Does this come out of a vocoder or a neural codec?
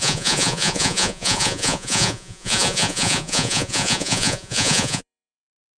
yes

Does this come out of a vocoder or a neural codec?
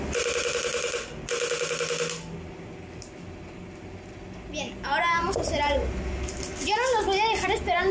no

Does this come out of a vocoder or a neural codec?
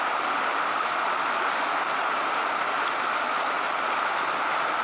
no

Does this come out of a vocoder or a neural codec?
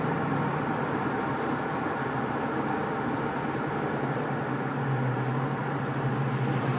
no